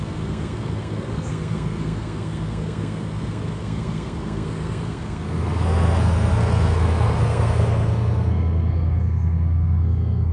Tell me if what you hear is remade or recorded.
remade